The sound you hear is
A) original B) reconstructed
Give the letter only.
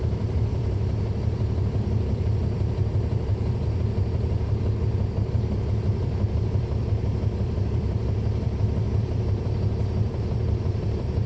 B